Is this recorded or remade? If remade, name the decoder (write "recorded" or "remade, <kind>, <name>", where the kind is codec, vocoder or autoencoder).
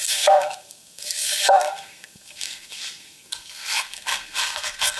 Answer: remade, codec, SNAC